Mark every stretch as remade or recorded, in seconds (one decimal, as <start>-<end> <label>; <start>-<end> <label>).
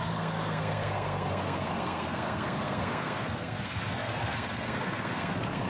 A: 0.0-5.7 remade